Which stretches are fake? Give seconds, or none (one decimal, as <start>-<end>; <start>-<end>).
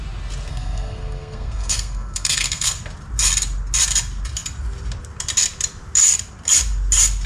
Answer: 0.5-2.8